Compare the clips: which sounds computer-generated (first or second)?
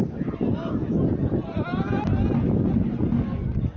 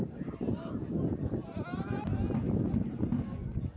second